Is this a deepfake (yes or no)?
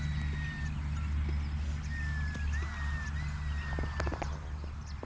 no